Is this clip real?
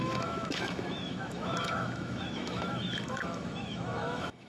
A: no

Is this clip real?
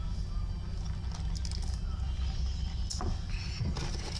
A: yes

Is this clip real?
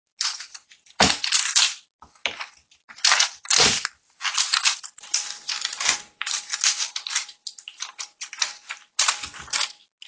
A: yes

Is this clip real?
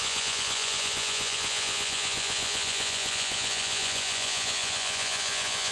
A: no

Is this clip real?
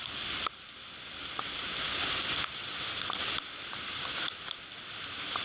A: yes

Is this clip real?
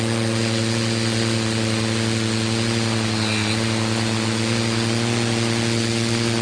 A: yes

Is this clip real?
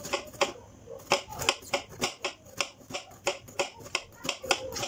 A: yes